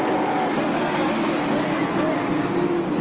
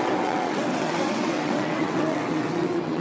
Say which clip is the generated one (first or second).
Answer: second